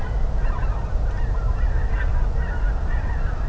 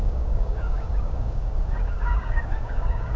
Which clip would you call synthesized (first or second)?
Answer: second